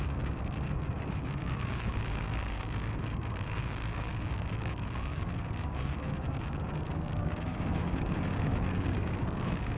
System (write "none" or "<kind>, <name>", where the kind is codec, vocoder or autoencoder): codec, DAC